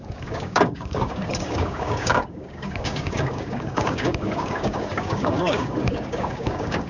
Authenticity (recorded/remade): remade